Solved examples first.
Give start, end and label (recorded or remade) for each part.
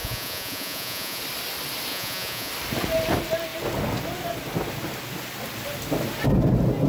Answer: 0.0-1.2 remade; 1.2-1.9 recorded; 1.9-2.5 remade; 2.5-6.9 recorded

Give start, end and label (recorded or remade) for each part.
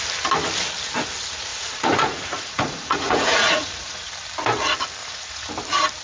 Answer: 0.0-1.5 recorded; 1.5-4.1 remade; 4.1-5.0 recorded; 5.0-5.5 remade; 5.5-6.0 recorded